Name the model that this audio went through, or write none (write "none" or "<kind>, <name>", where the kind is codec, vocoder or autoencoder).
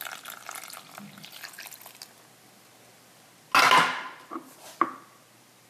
none